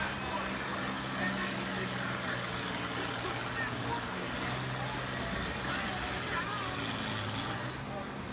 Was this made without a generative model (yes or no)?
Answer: yes